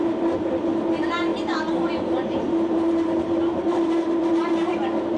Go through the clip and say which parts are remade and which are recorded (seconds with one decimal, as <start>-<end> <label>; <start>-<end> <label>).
0.0-5.2 recorded